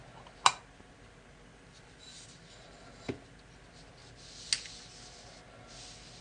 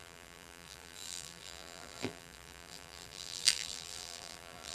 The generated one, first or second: second